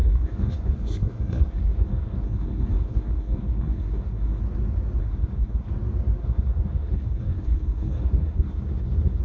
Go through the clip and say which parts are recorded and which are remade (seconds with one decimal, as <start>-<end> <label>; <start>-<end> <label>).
0.0-4.4 remade; 4.4-5.0 recorded; 5.0-5.7 remade; 5.7-6.2 recorded; 6.2-9.2 remade